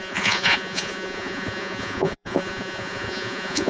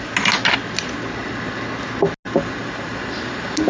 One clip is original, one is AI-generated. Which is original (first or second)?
second